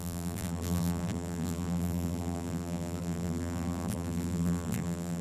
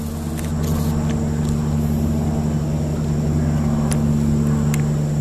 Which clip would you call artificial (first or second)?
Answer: first